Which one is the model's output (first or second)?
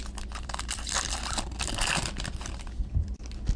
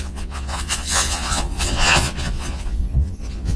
second